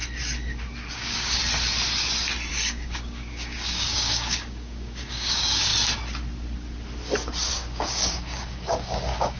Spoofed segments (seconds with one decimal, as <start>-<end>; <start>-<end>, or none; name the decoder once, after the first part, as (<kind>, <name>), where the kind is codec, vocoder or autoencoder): 0.9-1.4 (codec, DAC); 2.5-5.7; 7.5-9.4